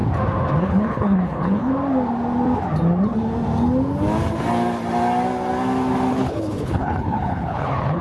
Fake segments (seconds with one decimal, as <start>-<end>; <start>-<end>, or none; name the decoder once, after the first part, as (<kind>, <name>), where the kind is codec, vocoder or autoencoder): 0.6-1.7 (codec, HILCodec); 6.1-8.0